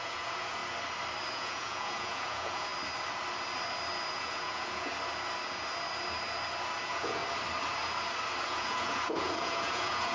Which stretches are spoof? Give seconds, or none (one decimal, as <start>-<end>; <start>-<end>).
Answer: 0.0-0.6; 1.3-2.7; 4.1-4.9; 6.8-7.2; 8.4-10.1